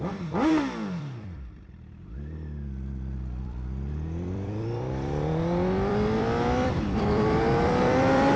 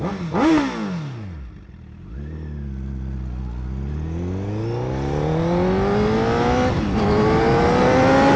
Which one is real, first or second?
second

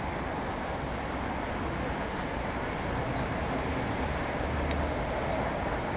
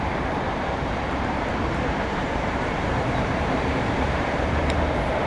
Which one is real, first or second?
first